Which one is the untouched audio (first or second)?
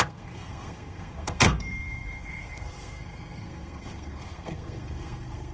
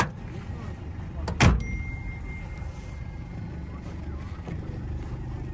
second